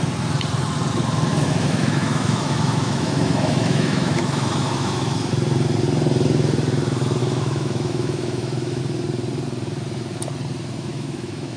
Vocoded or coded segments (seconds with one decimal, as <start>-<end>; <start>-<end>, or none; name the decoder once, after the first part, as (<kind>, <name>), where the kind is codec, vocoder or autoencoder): 1.3-5.3 (autoencoder, DAC-VAE); 7.2-8.8; 10.9-11.6